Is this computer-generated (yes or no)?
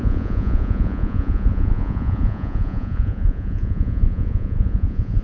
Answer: yes